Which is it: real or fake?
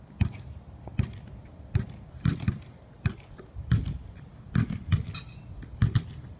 real